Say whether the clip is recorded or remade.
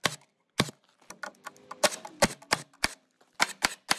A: recorded